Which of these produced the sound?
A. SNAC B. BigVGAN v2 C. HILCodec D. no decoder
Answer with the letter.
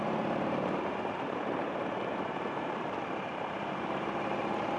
B